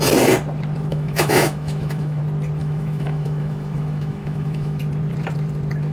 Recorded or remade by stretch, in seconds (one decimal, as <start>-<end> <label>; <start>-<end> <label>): 0.0-0.9 recorded; 0.9-2.2 remade; 2.2-2.6 recorded; 2.6-4.8 remade; 4.8-5.9 recorded